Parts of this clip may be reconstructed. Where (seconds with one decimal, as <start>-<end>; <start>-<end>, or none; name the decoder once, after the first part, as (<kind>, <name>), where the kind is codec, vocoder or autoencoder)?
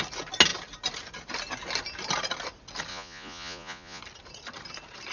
2.9-4.0 (vocoder, Vocos)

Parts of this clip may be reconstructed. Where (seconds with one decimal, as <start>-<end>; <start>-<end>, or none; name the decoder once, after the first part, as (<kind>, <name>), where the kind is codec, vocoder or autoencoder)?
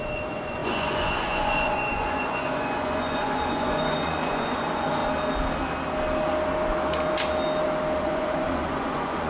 0.0-5.0 (vocoder, Vocos); 8.0-9.3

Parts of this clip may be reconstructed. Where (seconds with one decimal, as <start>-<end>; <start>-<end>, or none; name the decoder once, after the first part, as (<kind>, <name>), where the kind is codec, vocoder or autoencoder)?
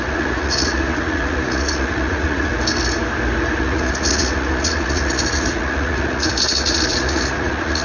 0.0-2.5 (vocoder, Vocos); 3.6-7.8